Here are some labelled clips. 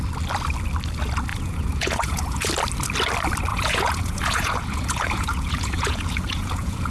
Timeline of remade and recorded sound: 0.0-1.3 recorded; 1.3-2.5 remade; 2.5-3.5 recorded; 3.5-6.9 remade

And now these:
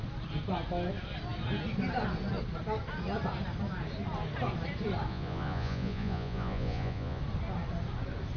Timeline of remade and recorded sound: 0.0-5.1 recorded; 5.1-7.2 remade; 7.2-8.4 recorded

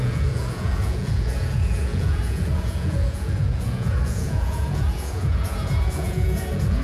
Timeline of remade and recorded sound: 0.0-6.8 remade

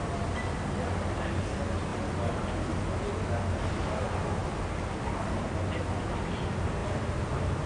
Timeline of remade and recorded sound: 0.0-7.7 recorded

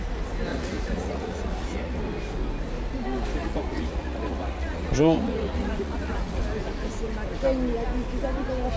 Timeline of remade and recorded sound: 0.0-0.5 recorded; 0.5-2.0 remade; 2.0-3.4 recorded; 3.4-6.4 remade; 6.4-8.8 recorded